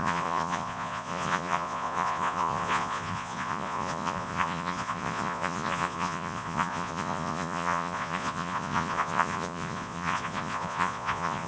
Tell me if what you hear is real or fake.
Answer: fake